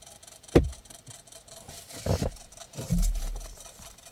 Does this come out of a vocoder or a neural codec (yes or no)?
no